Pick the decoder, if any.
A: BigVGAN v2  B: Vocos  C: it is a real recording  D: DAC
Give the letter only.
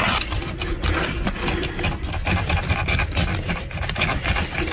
C